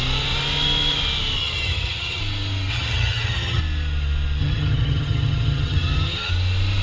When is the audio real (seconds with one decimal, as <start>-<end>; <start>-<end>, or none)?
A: 0.0-1.4; 2.2-2.7; 3.6-4.4; 6.3-6.8